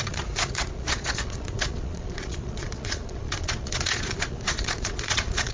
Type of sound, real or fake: fake